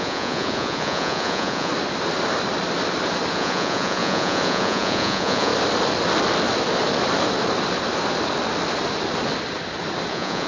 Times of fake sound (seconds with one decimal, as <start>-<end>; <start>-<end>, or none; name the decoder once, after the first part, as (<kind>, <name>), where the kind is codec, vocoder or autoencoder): 0.0-1.7 (vocoder, Vocos); 3.3-5.5; 10.1-10.5